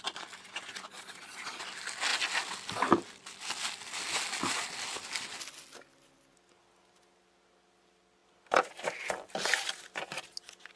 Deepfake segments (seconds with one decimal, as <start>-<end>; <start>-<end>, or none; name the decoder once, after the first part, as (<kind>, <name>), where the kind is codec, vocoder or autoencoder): 0.9-1.6 (vocoder, Vocos)